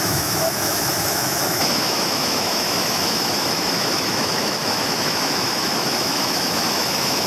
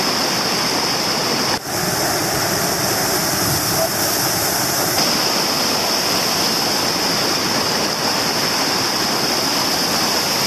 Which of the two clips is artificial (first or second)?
first